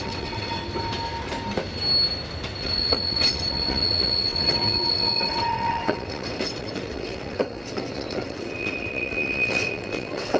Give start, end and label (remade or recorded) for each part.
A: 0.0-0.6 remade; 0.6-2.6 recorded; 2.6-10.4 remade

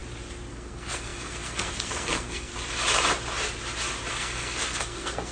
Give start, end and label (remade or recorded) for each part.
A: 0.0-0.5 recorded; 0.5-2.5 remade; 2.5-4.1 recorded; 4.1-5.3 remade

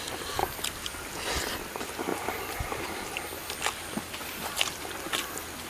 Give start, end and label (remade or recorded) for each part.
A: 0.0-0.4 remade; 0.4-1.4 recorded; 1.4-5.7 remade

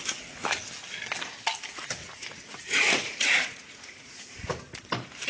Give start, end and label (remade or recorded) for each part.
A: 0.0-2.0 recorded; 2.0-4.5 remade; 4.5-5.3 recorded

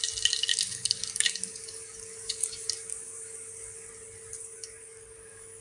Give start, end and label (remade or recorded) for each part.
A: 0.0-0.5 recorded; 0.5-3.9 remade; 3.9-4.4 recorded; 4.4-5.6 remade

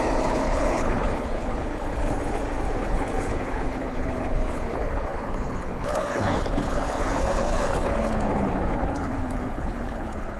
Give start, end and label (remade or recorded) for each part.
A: 0.0-2.2 remade; 2.2-2.8 recorded; 2.8-10.4 remade